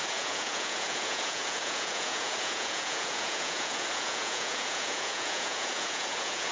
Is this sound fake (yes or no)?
yes